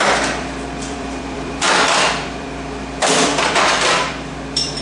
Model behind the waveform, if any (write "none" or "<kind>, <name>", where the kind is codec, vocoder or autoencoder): vocoder, BigVGAN v2